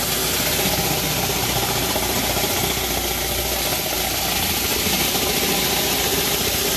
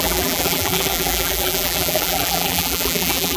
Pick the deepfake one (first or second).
second